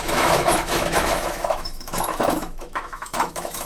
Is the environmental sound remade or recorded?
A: remade